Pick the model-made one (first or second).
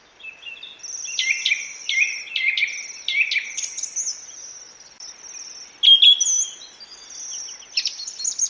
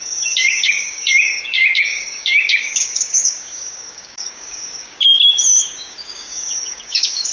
second